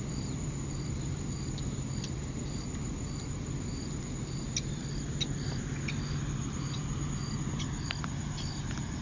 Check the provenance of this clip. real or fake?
real